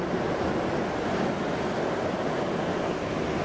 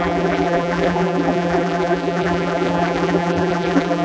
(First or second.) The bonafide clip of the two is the first